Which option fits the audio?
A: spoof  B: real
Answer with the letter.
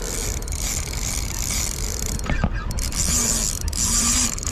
A